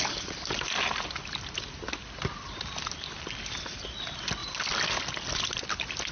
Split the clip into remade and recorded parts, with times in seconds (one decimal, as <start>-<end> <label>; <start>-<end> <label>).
0.0-6.1 recorded